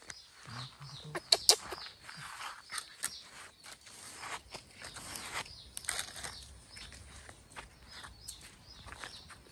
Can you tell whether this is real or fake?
real